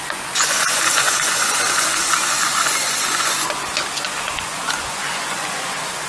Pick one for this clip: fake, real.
fake